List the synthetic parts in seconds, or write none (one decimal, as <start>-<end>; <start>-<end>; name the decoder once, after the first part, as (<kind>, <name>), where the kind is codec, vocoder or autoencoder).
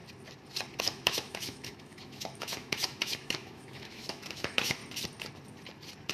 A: 0.8-4.8 (autoencoder, DAC-VAE)